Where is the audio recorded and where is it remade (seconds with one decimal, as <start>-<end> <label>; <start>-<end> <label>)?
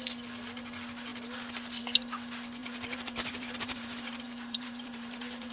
0.0-2.6 recorded; 2.6-5.5 remade